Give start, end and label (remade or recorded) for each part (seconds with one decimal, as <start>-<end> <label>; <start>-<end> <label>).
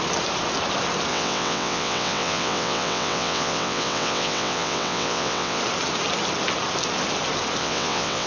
0.0-1.1 recorded; 1.1-5.6 remade; 5.6-7.6 recorded; 7.6-8.3 remade